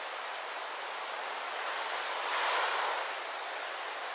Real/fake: real